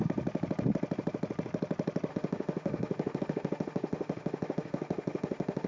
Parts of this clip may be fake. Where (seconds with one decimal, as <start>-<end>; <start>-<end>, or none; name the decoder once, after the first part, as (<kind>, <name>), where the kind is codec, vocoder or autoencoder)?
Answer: 2.1-5.7 (autoencoder, DAC-VAE)

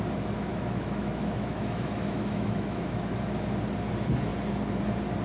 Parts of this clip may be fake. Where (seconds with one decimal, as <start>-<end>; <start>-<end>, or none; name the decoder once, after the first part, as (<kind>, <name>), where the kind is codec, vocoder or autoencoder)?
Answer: 0.5-3.0 (autoencoder, DAC-VAE)